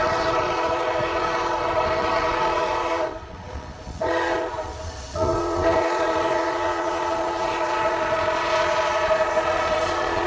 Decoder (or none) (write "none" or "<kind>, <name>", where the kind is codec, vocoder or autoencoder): vocoder, Vocos